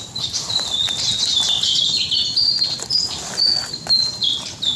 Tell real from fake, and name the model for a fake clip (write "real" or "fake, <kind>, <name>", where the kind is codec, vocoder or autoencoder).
real